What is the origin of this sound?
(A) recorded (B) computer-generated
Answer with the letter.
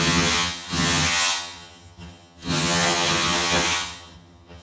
B